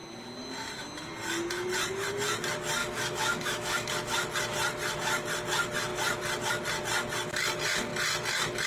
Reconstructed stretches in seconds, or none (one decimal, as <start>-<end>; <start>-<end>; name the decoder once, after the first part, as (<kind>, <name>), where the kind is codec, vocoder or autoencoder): 2.8-3.9 (autoencoder, DAC-VAE)